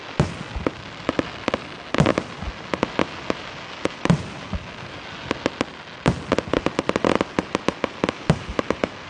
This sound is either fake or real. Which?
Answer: real